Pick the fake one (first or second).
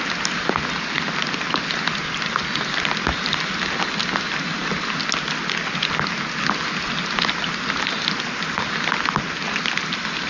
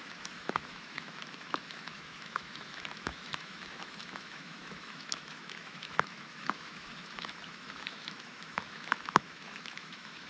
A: second